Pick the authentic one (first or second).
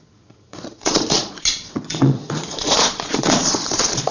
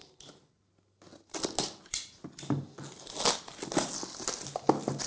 second